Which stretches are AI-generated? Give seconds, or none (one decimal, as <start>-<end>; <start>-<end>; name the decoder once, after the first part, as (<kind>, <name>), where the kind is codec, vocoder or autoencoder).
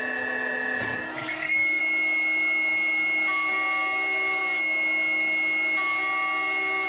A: 1.2-1.8 (codec, SNAC)